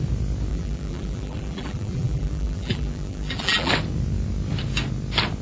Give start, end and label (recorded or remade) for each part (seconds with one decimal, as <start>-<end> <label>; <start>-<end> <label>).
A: 0.0-0.5 recorded; 0.5-3.7 remade; 3.7-5.4 recorded